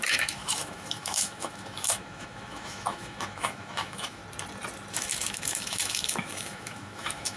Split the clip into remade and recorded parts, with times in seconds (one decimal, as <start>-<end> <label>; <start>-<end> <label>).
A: 0.0-4.2 remade; 4.2-4.9 recorded; 4.9-7.4 remade

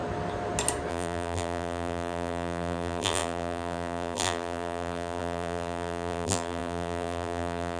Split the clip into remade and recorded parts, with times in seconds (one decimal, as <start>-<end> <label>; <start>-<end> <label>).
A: 0.0-0.9 recorded; 0.9-7.8 remade